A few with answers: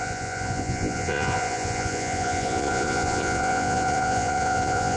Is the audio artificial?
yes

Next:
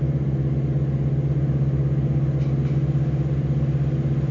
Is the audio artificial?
no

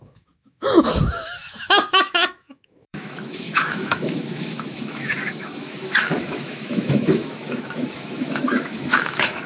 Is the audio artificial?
yes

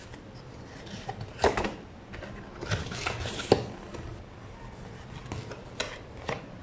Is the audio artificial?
no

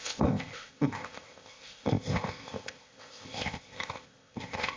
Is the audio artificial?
yes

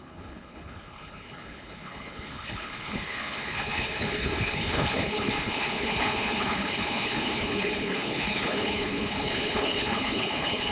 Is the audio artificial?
yes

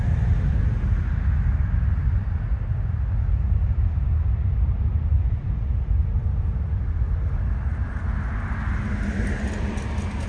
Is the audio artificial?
no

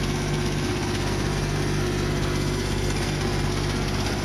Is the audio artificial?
yes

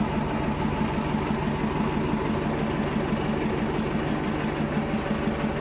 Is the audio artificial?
no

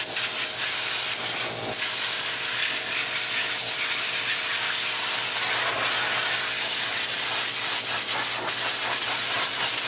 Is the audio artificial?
no